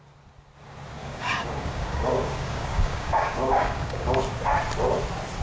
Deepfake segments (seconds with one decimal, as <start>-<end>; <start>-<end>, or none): 1.0-4.2